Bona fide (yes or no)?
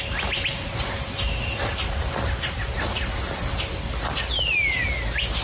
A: yes